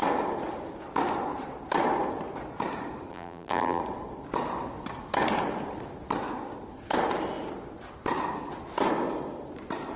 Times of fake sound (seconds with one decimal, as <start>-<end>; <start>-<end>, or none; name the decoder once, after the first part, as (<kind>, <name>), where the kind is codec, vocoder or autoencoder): 3.1-3.8 (vocoder, BigVGAN v2)